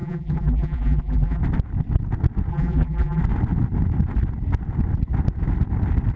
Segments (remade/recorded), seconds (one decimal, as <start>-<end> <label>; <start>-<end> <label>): 0.0-1.4 remade; 1.4-2.5 recorded; 2.5-3.2 remade; 3.2-6.2 recorded